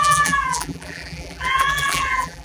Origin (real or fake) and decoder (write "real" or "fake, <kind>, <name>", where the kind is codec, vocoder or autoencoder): fake, vocoder, BigVGAN v2